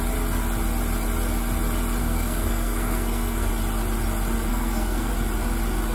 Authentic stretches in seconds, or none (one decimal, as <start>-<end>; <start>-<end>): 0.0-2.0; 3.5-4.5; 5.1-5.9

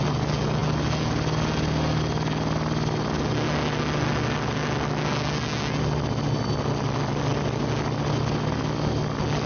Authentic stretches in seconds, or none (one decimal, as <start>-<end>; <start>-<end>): 0.0-9.5

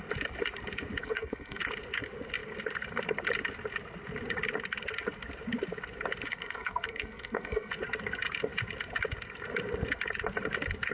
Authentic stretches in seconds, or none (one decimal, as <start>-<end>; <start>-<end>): 0.0-1.0; 1.6-6.3; 7.7-10.9

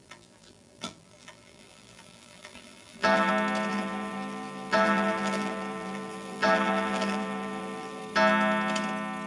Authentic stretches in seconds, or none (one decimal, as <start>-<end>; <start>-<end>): 3.3-3.7; 8.0-9.3

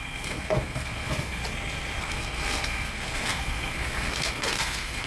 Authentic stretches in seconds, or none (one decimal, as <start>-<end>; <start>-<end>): 1.4-2.0

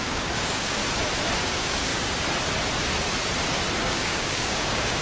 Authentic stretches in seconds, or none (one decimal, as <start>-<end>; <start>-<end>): 0.8-1.4; 1.9-3.8

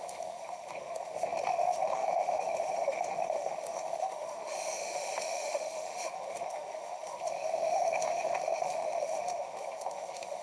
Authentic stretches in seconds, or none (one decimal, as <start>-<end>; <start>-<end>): none